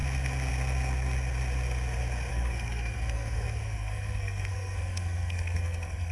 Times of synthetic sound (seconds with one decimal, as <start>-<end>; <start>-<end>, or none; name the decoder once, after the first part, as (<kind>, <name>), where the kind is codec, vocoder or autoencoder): 2.3-6.1 (codec, SNAC)